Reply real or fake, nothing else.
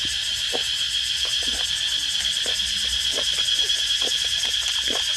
real